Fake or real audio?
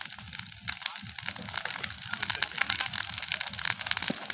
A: real